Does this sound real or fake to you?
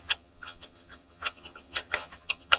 fake